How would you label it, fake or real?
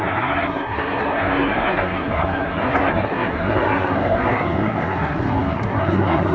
fake